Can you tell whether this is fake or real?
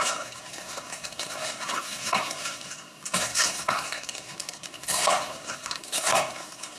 fake